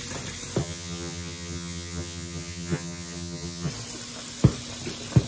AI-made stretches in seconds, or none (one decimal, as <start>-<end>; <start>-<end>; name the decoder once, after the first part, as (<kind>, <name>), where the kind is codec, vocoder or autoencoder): 0.6-3.7 (vocoder, HiFi-GAN)